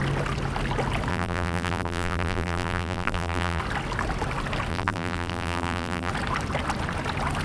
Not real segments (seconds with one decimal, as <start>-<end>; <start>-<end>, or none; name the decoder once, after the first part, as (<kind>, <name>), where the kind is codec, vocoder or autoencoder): 1.1-3.6 (vocoder, BigVGAN v2); 4.7-6.1